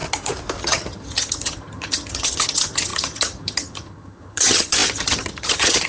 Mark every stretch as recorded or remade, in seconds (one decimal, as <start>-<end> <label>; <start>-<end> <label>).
0.0-0.6 recorded; 0.6-5.9 remade